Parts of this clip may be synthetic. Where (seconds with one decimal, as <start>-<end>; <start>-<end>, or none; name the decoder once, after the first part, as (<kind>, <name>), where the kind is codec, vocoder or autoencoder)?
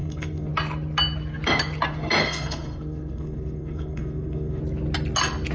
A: 0.0-0.5 (codec, SNAC); 2.2-4.6